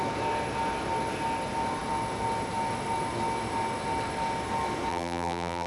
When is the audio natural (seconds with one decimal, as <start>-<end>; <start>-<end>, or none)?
0.0-4.9